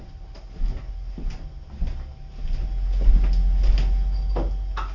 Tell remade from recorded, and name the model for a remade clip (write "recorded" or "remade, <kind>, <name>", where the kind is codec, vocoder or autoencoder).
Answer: recorded